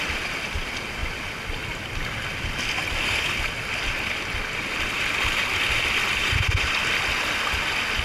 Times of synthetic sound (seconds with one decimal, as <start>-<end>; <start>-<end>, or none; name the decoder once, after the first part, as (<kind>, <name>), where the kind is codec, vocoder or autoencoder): 6.2-6.7 (vocoder, BigVGAN v2)